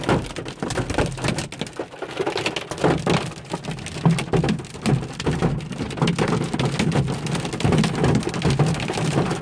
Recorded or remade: recorded